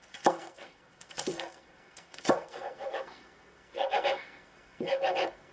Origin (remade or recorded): remade